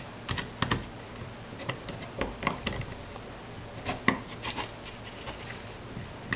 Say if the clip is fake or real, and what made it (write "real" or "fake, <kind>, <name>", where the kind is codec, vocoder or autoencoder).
real